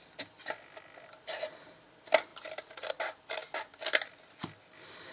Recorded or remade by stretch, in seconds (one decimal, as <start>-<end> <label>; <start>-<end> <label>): 0.0-5.1 recorded